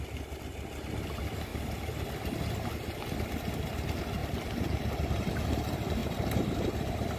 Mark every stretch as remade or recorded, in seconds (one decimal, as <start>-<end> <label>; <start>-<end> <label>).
0.0-1.5 recorded; 1.5-2.1 remade; 2.1-6.0 recorded; 6.0-7.2 remade

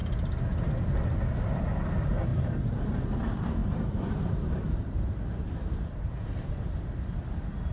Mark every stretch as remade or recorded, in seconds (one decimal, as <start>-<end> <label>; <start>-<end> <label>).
0.0-2.3 recorded; 2.3-2.8 remade; 2.8-3.6 recorded; 3.6-6.5 remade; 6.5-7.7 recorded

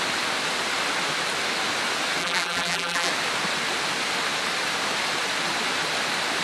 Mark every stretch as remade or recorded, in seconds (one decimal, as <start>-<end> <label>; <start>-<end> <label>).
0.0-2.2 recorded; 2.2-3.1 remade; 3.1-6.4 recorded